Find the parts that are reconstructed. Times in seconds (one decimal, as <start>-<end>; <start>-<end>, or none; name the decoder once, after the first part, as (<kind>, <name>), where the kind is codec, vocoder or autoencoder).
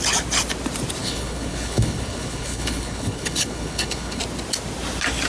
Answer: 1.0-4.2 (codec, HILCodec)